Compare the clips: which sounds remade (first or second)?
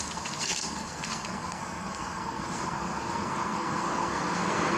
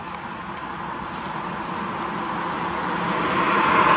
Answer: first